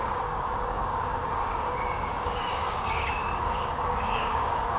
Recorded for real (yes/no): no